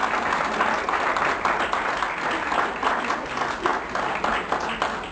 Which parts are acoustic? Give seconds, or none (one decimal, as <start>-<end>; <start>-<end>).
0.0-5.1